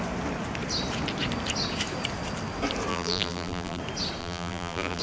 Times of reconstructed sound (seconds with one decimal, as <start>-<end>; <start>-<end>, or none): 2.9-3.8; 4.2-5.0